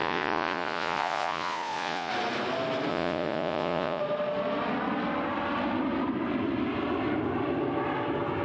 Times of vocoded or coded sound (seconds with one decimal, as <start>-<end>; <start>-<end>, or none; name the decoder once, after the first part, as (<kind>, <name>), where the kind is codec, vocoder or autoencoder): 0.0-2.1 (vocoder, Vocos); 2.9-4.0